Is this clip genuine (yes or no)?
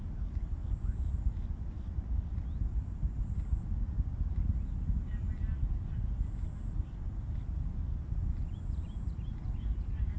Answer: yes